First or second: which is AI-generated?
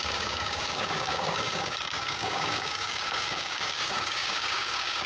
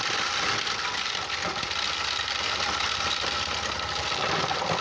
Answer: first